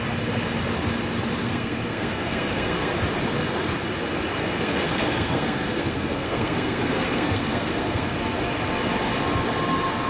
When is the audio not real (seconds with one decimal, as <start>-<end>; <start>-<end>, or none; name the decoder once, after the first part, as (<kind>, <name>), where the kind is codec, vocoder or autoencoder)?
1.4-2.9 (codec, SNAC); 4.4-8.1